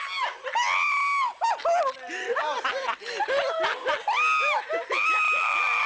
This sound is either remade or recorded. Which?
recorded